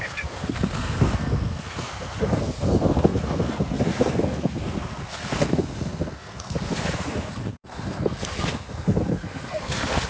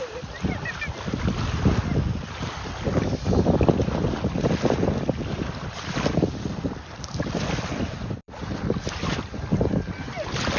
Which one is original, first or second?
second